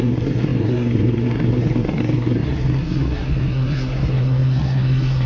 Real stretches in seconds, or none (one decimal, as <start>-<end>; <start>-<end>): none

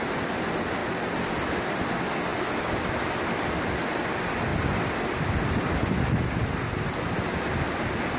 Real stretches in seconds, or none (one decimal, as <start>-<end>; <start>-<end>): 0.0-8.2